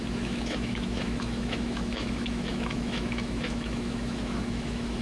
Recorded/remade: remade